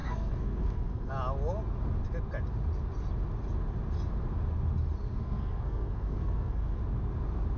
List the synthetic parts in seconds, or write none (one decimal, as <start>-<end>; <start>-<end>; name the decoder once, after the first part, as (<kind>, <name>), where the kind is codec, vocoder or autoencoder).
0.0-1.1 (codec, SNAC); 5.2-6.8